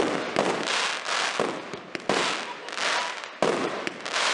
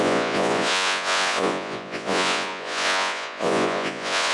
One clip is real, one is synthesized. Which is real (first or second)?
first